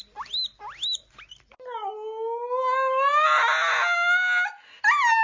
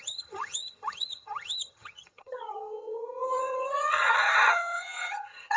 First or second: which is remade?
second